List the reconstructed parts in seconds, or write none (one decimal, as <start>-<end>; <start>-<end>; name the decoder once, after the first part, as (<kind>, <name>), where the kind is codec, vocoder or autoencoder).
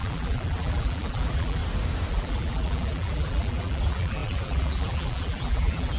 0.0-1.6 (vocoder, BigVGAN v2); 2.1-6.0